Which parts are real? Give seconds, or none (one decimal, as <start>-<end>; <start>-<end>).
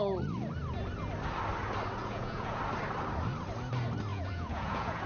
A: 0.0-2.0; 2.6-4.1